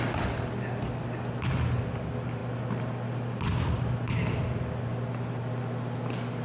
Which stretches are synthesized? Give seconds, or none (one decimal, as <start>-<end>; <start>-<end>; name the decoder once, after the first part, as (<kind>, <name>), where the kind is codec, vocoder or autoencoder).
none